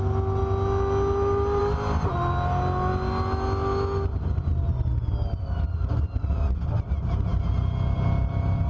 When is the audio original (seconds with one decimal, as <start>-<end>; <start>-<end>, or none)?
0.0-8.7